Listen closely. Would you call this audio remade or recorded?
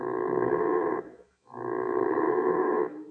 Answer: remade